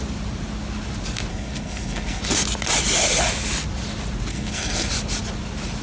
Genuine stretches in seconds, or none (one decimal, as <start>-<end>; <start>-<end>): 0.0-1.3; 2.2-4.3; 4.9-5.8